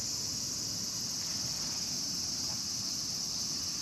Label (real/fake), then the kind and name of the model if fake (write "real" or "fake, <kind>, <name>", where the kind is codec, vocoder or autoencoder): real